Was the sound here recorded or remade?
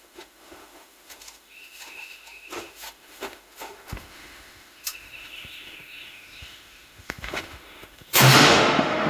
remade